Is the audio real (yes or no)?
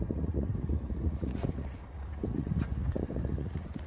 no